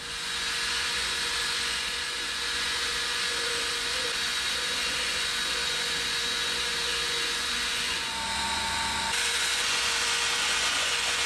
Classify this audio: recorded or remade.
remade